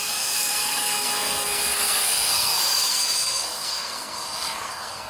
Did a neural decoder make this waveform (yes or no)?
yes